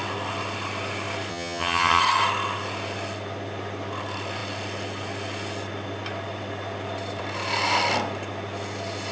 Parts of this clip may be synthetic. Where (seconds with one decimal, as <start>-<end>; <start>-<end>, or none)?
1.3-2.0